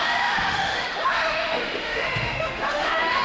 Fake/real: fake